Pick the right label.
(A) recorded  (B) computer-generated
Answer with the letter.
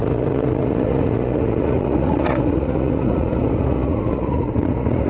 B